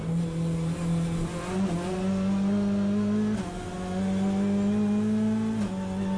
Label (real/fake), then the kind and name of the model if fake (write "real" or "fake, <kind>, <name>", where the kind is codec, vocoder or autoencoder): real